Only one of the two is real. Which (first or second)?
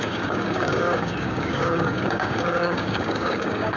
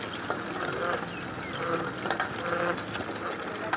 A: second